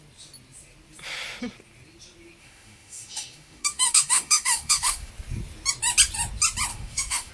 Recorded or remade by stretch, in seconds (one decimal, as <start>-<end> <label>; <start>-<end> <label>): 0.0-2.4 recorded; 2.4-5.1 remade; 5.1-6.7 recorded; 6.7-7.3 remade